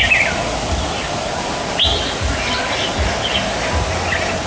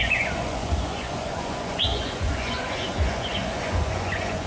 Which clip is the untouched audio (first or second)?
first